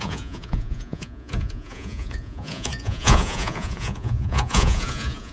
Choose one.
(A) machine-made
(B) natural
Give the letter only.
A